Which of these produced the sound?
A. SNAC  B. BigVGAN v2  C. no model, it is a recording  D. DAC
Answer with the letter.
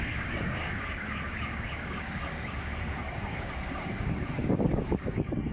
D